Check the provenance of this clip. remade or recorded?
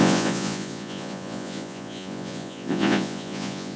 remade